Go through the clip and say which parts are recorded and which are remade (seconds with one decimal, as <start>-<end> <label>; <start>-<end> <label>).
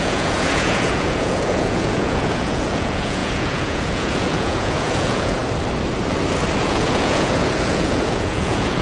0.0-5.4 remade; 5.4-6.6 recorded; 6.6-8.8 remade